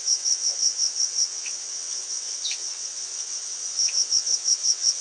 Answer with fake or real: fake